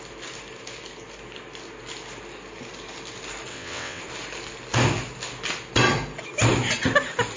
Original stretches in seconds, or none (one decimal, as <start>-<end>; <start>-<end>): 0.0-3.5; 4.0-7.4